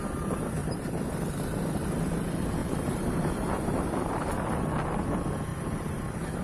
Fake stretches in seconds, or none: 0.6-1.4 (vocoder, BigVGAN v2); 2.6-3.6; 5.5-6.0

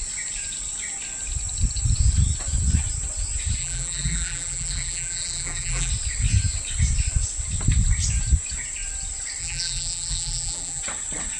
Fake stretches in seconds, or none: 3.6-5.9 (vocoder, BigVGAN v2); 9.4-10.8

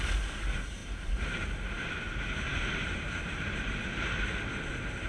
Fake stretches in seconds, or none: 0.8-3.9 (vocoder, BigVGAN v2)

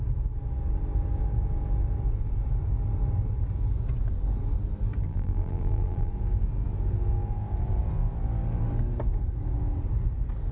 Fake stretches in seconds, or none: 5.0-6.1 (vocoder, BigVGAN v2)